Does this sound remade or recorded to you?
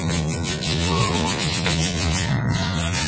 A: remade